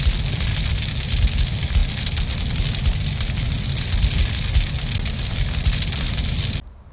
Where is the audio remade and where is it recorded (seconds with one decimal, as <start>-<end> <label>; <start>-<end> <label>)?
0.0-6.9 recorded

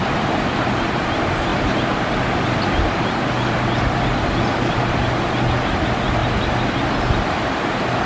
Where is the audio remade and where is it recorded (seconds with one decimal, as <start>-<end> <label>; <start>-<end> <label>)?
0.0-8.1 recorded

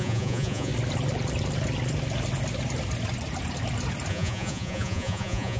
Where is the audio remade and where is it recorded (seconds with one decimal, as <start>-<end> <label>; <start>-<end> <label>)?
0.0-0.7 remade; 0.7-4.1 recorded; 4.1-5.6 remade

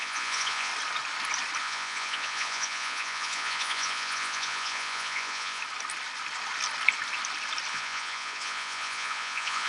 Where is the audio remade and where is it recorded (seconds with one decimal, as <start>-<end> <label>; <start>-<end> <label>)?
0.0-0.7 remade; 0.7-1.6 recorded; 1.6-5.6 remade; 5.6-7.7 recorded; 7.7-9.7 remade

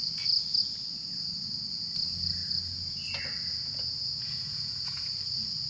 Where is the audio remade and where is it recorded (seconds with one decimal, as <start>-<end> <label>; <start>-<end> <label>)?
0.0-3.6 recorded; 3.6-5.0 remade; 5.0-5.7 recorded

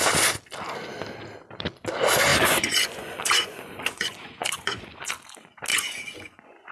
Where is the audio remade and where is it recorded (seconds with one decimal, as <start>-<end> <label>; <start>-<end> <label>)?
0.0-2.3 recorded; 2.3-5.1 remade; 5.1-5.7 recorded; 5.7-6.7 remade

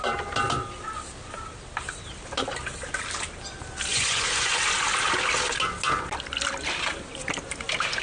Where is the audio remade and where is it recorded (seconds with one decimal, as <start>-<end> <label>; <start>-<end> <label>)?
0.0-3.9 recorded; 3.9-4.6 remade; 4.6-8.0 recorded

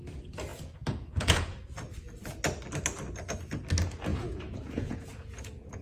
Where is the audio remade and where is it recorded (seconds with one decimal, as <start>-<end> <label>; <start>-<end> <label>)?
0.0-0.5 recorded; 0.5-1.7 remade; 1.7-4.1 recorded; 4.1-5.8 remade